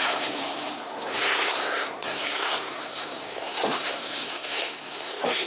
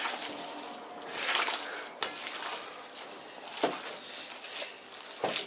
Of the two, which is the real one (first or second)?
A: second